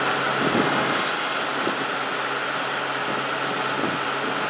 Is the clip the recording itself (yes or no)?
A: yes